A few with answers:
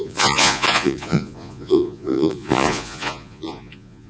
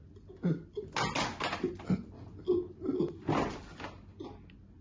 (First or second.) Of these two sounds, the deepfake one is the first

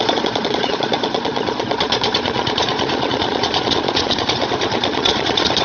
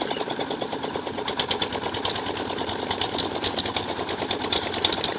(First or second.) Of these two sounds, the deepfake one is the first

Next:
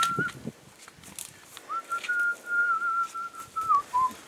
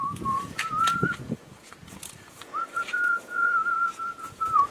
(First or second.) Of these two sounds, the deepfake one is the second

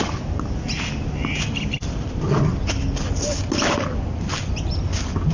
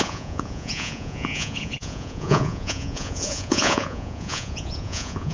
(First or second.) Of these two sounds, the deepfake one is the second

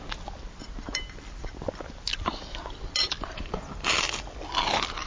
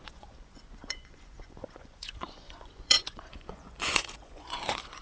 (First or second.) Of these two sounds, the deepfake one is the second